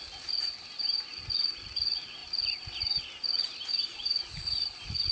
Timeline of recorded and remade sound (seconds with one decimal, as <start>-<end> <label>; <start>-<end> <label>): 0.0-5.1 recorded